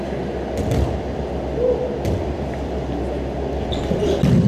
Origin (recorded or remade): recorded